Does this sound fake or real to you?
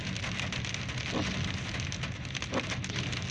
real